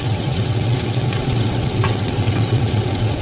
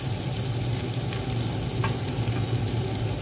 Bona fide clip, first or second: second